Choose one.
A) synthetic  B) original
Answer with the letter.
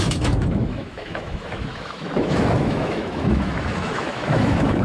A